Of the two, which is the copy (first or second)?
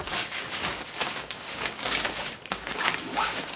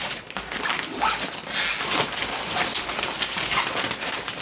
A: first